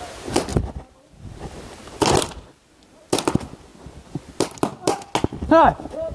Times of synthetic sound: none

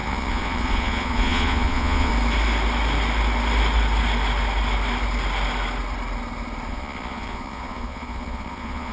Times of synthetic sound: 0.0-2.1 (vocoder, Vocos); 6.7-8.9

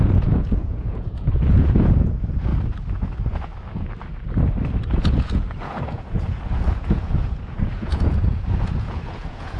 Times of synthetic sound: 0.0-2.5 (vocoder, Vocos); 5.0-9.6

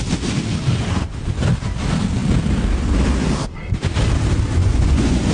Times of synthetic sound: 4.6-5.3 (vocoder, Vocos)

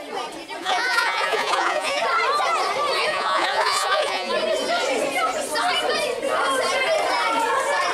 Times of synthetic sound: 0.6-2.0 (vocoder, Vocos); 3.1-4.3

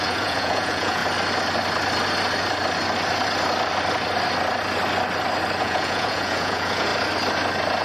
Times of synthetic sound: 0.0-1.0 (vocoder, Vocos); 5.6-6.9

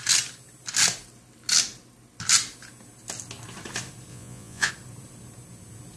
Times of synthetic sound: 4.1-4.7 (vocoder, Vocos)